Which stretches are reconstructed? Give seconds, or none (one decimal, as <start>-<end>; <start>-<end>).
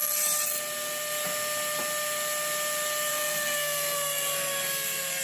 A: 3.1-5.2